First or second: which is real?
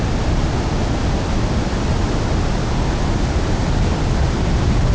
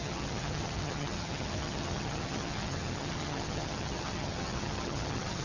first